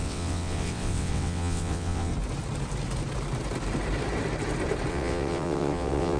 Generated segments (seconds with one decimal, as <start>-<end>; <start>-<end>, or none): 0.0-2.1; 4.9-6.2